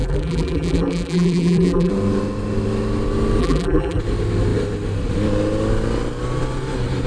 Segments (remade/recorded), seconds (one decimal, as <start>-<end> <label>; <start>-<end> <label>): 0.0-1.9 remade; 1.9-3.4 recorded; 3.4-4.0 remade; 4.0-7.1 recorded